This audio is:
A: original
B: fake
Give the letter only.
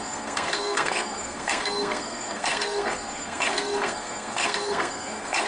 B